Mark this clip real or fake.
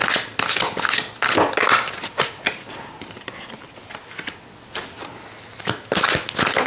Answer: real